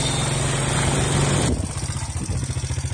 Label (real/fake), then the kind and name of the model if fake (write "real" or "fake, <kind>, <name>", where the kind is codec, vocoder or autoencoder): real